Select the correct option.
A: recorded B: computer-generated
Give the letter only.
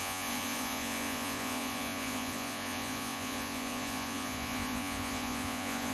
B